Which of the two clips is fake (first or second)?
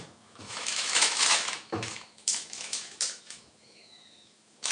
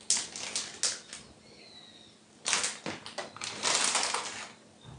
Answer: first